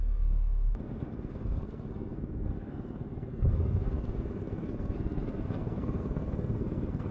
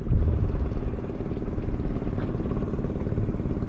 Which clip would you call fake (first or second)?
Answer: first